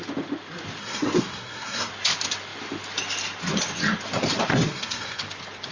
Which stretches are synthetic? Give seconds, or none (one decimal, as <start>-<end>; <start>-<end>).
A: 0.8-1.9; 4.5-5.2